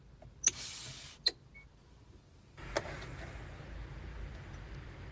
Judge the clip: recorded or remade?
recorded